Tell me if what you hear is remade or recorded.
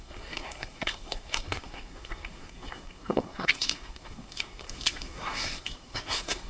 remade